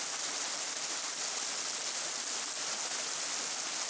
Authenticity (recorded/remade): recorded